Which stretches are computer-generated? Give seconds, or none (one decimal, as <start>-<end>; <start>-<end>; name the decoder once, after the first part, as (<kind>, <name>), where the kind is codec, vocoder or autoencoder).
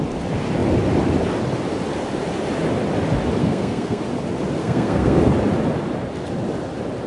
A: 3.4-4.0 (codec, SNAC); 4.6-5.2